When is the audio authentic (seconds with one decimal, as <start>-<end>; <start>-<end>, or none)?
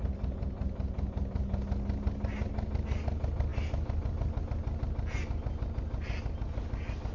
0.0-7.1